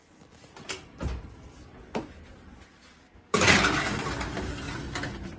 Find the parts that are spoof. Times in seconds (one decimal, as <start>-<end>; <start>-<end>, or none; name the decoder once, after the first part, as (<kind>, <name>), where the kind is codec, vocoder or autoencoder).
none